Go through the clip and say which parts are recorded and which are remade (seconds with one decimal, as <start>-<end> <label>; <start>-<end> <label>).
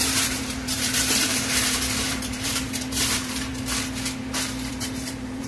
0.0-3.5 remade; 3.5-4.7 recorded; 4.7-5.5 remade